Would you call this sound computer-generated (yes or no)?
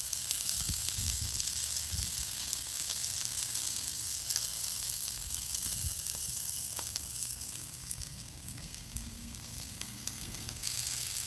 yes